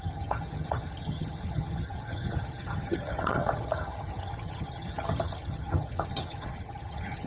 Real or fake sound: fake